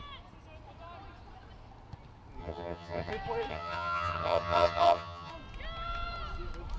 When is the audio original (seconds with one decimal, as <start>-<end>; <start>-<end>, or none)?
0.0-2.4; 3.1-3.5; 5.3-6.8